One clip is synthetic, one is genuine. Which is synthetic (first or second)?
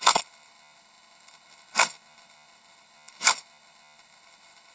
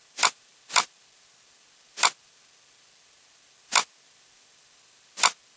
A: first